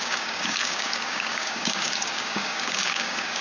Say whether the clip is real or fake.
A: fake